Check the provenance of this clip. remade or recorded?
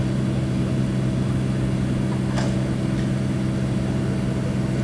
recorded